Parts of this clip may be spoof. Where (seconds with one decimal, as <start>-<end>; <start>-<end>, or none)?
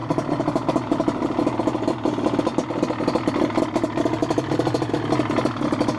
4.2-4.9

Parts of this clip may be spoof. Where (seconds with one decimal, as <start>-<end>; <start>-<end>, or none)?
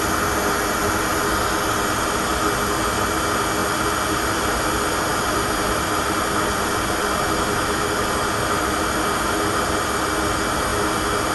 5.1-5.7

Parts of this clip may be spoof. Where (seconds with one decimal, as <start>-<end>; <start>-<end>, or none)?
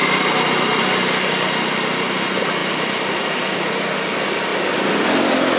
2.6-3.6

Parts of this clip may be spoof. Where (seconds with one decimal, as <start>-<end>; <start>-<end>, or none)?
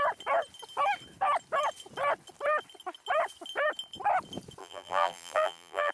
4.6-5.9